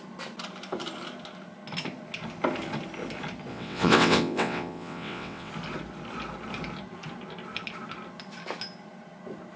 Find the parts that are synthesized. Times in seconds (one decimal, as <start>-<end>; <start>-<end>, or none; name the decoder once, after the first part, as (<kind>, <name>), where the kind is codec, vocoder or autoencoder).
3.5-5.5 (vocoder, WaveNeXt)